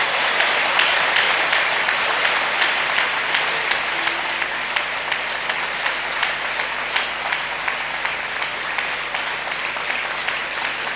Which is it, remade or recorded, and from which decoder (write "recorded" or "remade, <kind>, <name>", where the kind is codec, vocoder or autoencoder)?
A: recorded